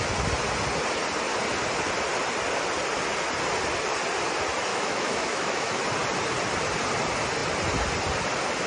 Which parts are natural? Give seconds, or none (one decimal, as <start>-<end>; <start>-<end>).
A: 0.0-4.7; 5.8-8.7